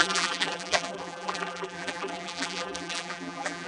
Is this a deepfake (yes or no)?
yes